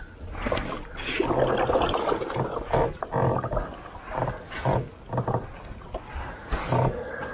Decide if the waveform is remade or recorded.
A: recorded